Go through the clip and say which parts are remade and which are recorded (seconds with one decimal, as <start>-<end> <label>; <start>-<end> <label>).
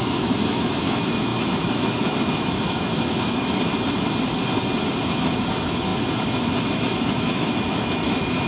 0.0-3.7 remade; 3.7-5.0 recorded; 5.0-8.5 remade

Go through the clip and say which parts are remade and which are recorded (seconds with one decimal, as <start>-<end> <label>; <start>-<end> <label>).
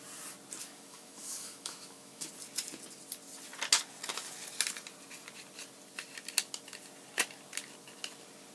0.0-0.6 recorded; 0.6-2.3 remade; 2.3-8.5 recorded